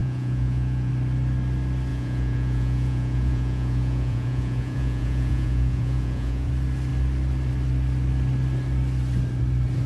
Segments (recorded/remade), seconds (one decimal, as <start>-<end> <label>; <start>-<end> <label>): 0.0-0.9 remade; 0.9-1.9 recorded; 1.9-6.5 remade; 6.5-9.9 recorded